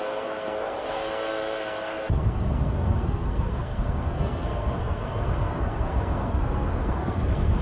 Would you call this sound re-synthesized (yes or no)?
yes